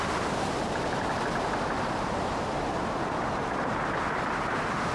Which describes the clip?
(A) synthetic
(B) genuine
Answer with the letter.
B